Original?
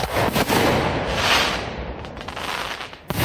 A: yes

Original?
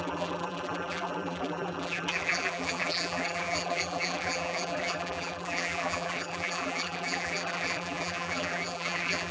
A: no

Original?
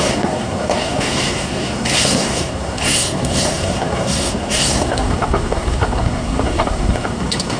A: no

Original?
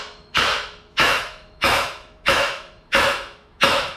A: no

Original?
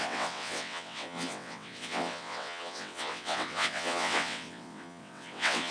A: no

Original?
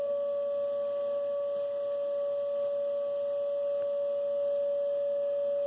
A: yes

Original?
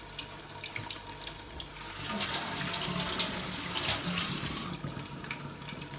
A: yes